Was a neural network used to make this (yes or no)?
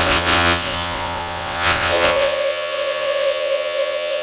yes